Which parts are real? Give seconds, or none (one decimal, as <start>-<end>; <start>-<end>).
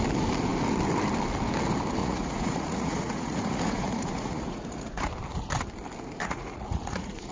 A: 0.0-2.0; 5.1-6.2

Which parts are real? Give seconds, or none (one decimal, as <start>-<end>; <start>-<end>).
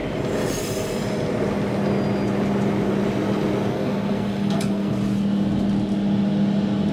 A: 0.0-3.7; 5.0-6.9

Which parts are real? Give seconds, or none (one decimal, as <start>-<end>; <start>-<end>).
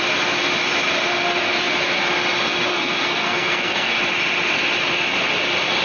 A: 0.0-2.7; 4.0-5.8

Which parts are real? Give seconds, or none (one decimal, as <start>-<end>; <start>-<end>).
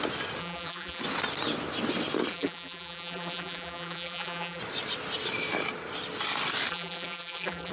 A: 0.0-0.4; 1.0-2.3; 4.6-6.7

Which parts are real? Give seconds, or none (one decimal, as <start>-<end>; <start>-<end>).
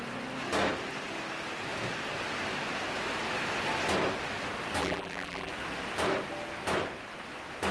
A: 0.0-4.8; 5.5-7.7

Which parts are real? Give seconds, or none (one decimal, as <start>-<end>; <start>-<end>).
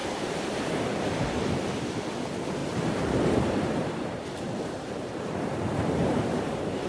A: 1.5-2.6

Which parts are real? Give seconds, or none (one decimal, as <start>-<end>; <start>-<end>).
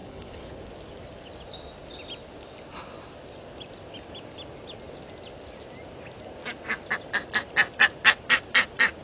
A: 0.6-9.0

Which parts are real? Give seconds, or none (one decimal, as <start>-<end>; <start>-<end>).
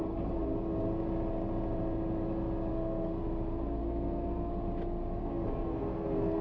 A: 0.0-2.7; 3.2-3.8; 4.5-5.2